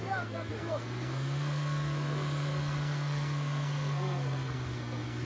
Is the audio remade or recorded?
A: remade